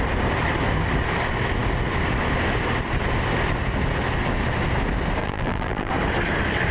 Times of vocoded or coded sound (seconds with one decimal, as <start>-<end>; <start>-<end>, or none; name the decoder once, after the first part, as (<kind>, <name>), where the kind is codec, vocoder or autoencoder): 5.2-5.9 (vocoder, BigVGAN v2)